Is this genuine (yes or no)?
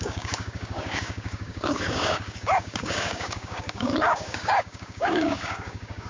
no